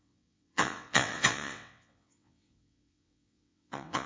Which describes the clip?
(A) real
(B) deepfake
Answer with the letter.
B